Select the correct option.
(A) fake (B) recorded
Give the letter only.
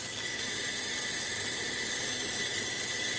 B